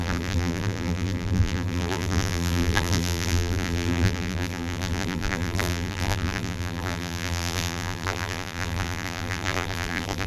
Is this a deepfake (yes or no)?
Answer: yes